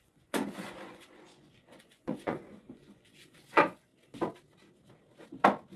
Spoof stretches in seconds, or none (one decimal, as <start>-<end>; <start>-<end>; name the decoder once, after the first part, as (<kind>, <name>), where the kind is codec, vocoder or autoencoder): 0.0-3.9 (vocoder, Vocos)